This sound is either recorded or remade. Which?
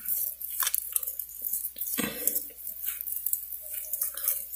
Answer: recorded